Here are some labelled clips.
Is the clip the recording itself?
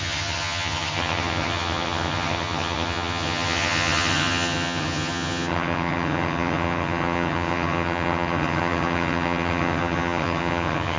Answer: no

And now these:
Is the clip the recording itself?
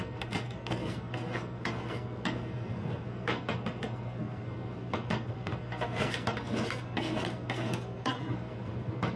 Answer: no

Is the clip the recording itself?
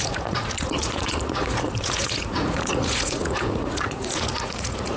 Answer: no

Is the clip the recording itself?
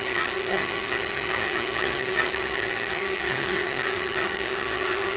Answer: no